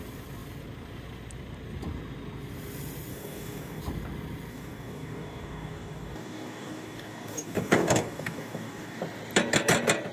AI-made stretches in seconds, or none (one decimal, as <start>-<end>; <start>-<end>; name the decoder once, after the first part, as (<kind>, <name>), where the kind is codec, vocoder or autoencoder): 3.1-3.8 (codec, DAC); 4.5-9.0